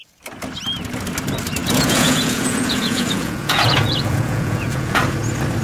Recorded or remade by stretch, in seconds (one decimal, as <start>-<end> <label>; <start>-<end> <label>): 0.0-1.6 recorded; 1.6-5.0 remade; 5.0-5.6 recorded